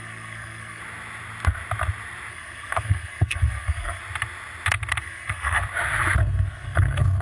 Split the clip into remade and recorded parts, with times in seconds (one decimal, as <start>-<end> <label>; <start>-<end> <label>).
0.0-0.8 remade; 0.8-2.3 recorded; 2.3-4.0 remade; 4.0-5.0 recorded; 5.0-5.6 remade; 5.6-6.2 recorded; 6.2-7.2 remade